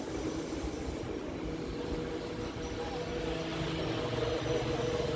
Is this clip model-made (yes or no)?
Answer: no